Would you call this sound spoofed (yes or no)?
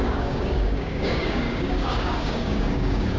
yes